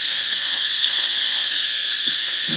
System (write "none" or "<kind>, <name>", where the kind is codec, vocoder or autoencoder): codec, SNAC